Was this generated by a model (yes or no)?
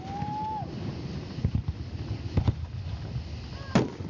no